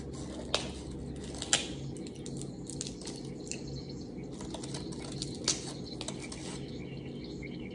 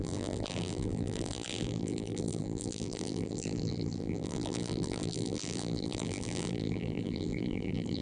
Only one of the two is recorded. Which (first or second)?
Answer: first